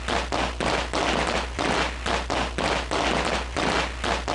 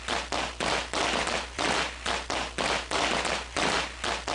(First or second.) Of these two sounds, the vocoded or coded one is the second